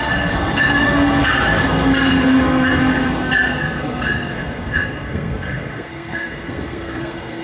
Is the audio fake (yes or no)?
yes